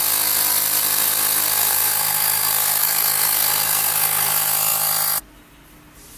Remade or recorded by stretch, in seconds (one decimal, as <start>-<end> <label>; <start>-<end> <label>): 0.0-1.6 recorded; 1.6-4.3 remade; 4.3-6.2 recorded